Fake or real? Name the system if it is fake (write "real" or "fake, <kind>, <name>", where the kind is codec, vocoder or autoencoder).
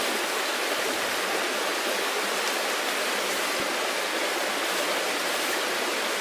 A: real